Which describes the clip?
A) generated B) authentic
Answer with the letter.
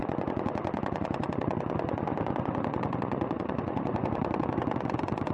A